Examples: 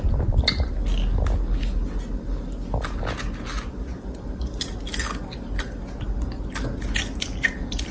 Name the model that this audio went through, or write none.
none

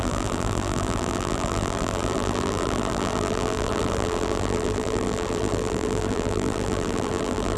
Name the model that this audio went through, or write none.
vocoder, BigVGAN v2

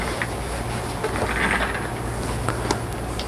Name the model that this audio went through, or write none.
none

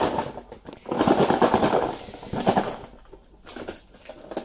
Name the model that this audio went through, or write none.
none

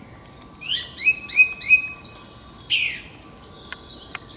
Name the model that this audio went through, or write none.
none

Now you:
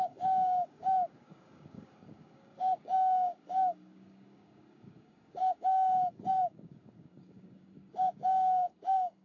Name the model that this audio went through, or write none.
codec, DAC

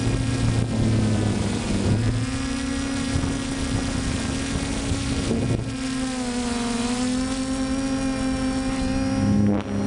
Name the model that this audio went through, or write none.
none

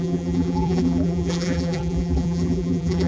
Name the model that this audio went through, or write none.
vocoder, BigVGAN v2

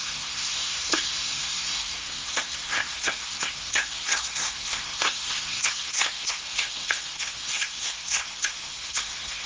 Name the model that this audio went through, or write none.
codec, SNAC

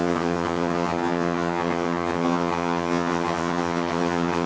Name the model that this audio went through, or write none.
vocoder, HiFi-GAN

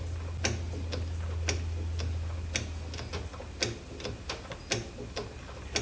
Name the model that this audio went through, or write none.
none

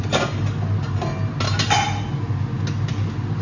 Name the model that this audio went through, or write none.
none